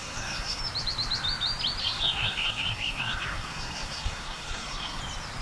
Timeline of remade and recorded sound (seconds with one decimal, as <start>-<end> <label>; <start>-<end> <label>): 0.0-0.6 remade; 0.6-1.8 recorded; 1.8-5.0 remade; 5.0-5.4 recorded